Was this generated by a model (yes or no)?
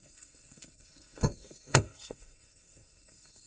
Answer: yes